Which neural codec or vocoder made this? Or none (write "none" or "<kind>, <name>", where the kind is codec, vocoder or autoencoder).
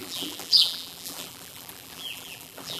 vocoder, BigVGAN v2